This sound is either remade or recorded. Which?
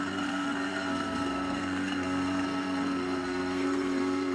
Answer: remade